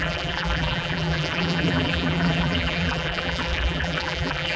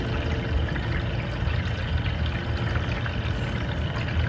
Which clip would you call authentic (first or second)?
second